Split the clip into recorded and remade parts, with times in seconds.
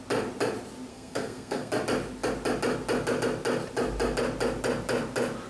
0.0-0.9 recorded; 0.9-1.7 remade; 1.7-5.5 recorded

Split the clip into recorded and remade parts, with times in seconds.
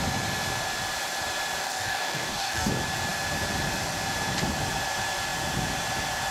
0.0-1.6 recorded; 1.6-2.7 remade; 2.7-6.3 recorded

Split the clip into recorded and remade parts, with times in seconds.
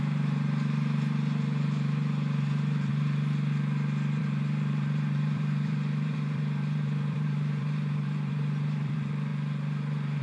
0.0-2.9 remade; 2.9-4.2 recorded; 4.2-9.3 remade; 9.3-10.2 recorded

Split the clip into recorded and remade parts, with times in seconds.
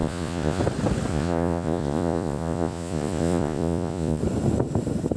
0.0-0.6 remade; 0.6-1.1 recorded; 1.1-4.2 remade; 4.2-5.2 recorded